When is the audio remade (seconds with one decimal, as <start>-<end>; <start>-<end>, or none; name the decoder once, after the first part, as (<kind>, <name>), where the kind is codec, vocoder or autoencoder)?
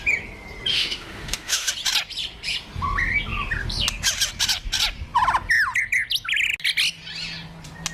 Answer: 0.7-1.7 (autoencoder, DAC-VAE)